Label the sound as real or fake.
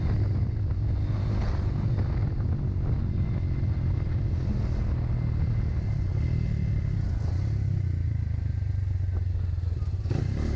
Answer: real